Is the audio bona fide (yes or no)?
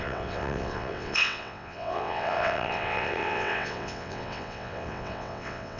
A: no